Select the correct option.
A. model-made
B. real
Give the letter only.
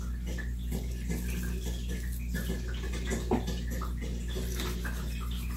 B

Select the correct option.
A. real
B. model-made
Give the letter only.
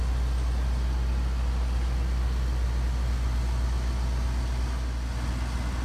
A